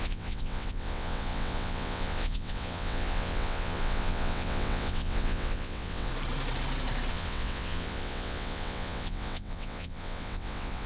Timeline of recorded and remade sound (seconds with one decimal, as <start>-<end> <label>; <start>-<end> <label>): 0.0-6.1 remade; 6.1-7.1 recorded; 7.1-10.9 remade